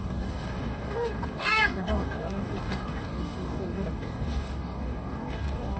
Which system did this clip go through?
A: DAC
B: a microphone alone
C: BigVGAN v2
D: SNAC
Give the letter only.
A